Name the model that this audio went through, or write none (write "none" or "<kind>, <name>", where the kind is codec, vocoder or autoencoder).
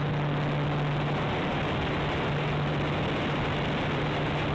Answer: none